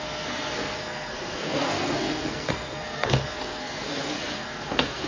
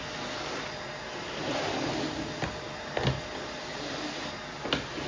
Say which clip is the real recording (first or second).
second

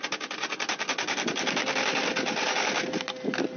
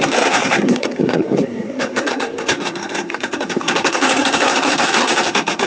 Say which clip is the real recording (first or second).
first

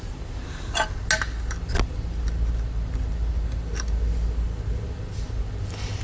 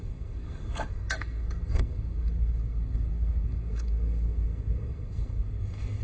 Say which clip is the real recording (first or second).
first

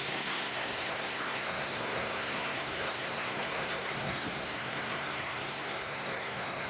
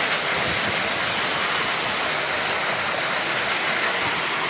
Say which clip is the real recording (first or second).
second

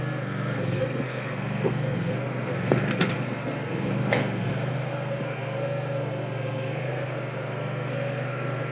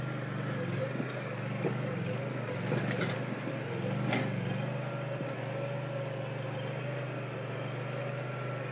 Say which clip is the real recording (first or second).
second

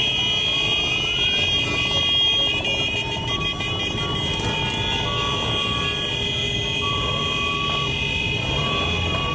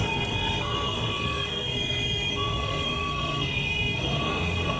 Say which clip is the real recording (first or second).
first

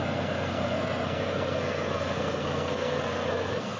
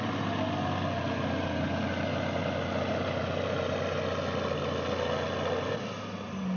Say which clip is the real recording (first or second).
second